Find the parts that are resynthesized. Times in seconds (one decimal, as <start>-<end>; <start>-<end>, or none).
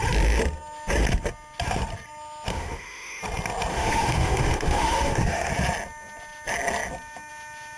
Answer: 2.5-3.2; 3.7-5.5